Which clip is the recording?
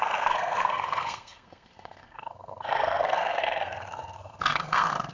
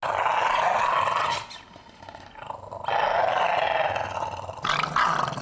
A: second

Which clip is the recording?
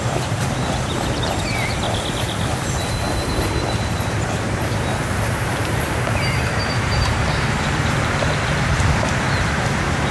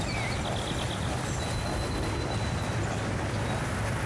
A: second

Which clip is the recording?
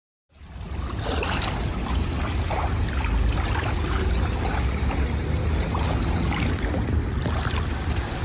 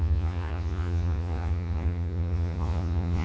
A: first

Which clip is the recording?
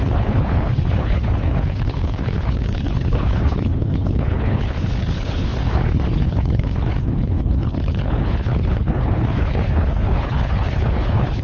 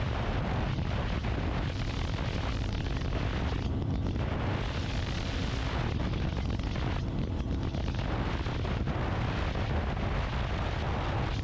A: second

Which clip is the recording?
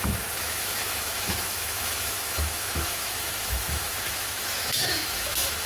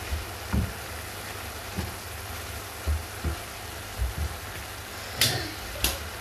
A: second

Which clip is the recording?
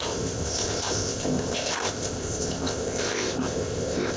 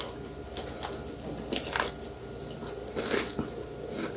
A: second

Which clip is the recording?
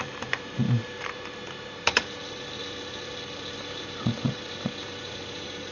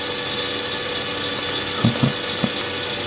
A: second